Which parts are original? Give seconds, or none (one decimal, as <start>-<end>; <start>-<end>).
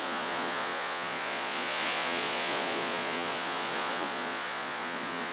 none